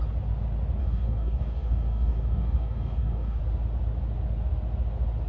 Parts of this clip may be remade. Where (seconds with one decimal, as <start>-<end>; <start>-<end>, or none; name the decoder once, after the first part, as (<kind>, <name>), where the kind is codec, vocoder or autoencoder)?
0.8-3.4 (codec, DAC)